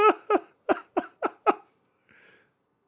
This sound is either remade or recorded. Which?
recorded